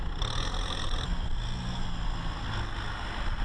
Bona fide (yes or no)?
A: yes